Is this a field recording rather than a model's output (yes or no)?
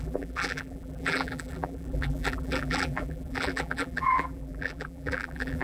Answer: no